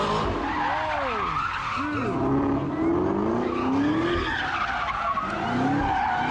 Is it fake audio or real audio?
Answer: real